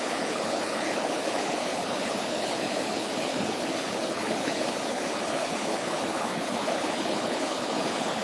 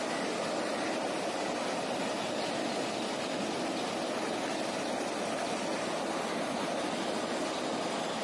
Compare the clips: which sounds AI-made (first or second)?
first